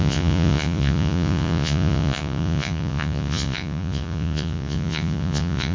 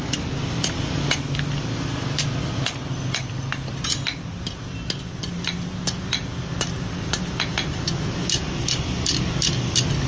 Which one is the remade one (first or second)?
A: first